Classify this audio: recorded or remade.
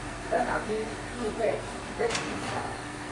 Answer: remade